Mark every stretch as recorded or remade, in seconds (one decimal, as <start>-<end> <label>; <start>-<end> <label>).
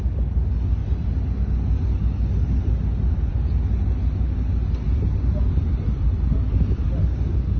0.0-7.6 recorded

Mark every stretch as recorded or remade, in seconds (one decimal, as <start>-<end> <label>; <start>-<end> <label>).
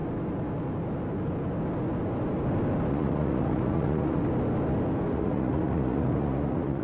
0.0-2.9 recorded; 2.9-4.2 remade; 4.2-5.1 recorded; 5.1-6.8 remade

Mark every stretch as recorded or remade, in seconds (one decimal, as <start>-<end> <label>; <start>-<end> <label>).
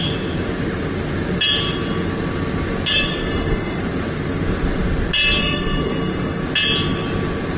0.0-3.1 recorded; 3.1-3.8 remade; 3.8-5.4 recorded; 5.4-6.4 remade; 6.4-7.6 recorded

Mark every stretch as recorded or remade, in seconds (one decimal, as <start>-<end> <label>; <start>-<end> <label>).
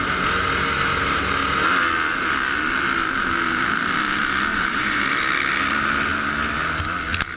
0.0-4.5 recorded; 4.5-5.1 remade; 5.1-7.4 recorded